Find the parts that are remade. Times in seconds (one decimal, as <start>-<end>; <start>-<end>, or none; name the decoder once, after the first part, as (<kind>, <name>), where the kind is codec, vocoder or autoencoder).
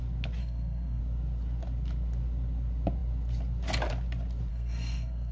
0.4-1.0 (codec, SNAC); 4.5-5.3